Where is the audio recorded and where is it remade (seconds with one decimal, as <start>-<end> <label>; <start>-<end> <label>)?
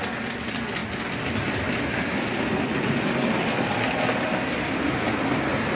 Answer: 0.0-5.7 recorded